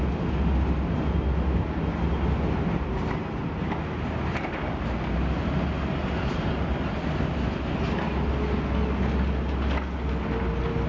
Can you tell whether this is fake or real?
real